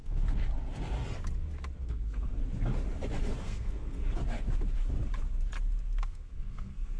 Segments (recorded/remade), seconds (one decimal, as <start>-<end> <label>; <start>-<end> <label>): 0.0-0.4 remade; 0.4-1.8 recorded; 1.8-2.4 remade; 2.4-3.4 recorded; 3.4-4.0 remade; 4.0-6.0 recorded; 6.0-7.0 remade